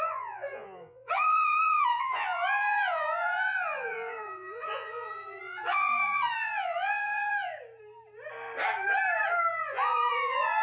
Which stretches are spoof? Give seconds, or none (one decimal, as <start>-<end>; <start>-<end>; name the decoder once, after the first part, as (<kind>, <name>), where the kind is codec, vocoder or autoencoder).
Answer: 0.0-7.5 (vocoder, Vocos); 9.5-10.6